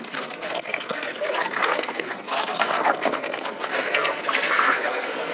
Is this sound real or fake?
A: fake